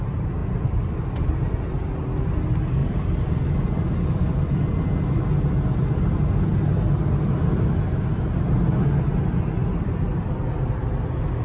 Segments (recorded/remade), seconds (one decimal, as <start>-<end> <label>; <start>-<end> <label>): 0.0-0.4 recorded; 0.4-1.3 remade; 1.3-2.8 recorded; 2.8-5.2 remade; 5.2-9.6 recorded; 9.6-10.6 remade; 10.6-11.4 recorded